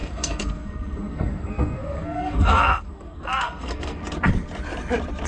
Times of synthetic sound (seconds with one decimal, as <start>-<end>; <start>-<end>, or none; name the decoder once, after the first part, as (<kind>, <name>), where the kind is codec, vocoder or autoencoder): 0.0-4.0 (codec, SNAC)